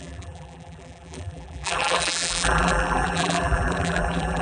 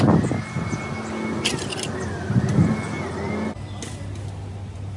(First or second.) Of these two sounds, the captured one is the second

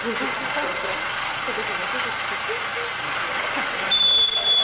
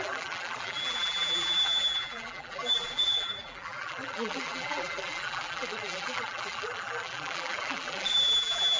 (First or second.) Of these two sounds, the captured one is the first